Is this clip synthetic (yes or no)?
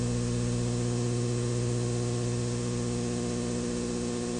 no